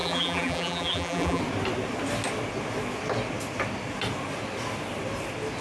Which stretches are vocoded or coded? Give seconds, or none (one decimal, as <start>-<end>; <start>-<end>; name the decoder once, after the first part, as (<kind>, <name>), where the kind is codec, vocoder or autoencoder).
0.0-1.4 (vocoder, BigVGAN v2)